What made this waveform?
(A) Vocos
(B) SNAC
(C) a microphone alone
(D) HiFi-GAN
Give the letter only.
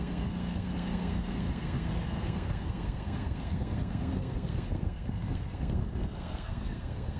B